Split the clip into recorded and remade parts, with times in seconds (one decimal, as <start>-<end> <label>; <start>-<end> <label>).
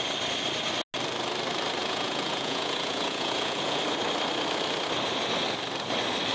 0.0-1.8 recorded; 1.8-3.8 remade; 3.8-6.3 recorded